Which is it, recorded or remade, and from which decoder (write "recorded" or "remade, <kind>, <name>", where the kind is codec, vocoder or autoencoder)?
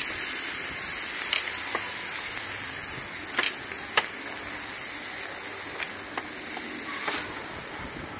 recorded